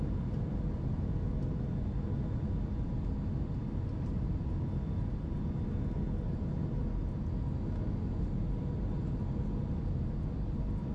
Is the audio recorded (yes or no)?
yes